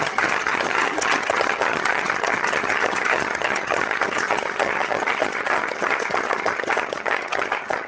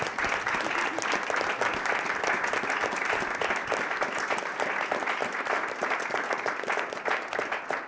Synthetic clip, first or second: first